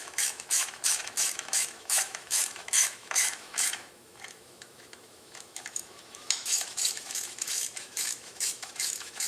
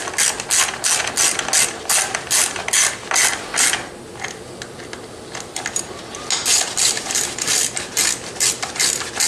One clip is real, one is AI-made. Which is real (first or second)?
second